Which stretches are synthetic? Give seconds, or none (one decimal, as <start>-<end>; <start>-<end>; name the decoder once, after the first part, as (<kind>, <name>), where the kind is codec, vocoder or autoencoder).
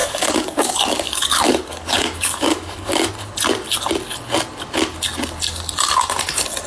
0.0-3.1 (codec, DAC)